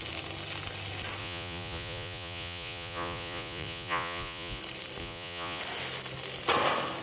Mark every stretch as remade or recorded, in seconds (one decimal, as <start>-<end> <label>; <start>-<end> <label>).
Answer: 0.0-1.2 recorded; 1.2-4.6 remade; 4.6-5.0 recorded; 5.0-5.6 remade; 5.6-7.0 recorded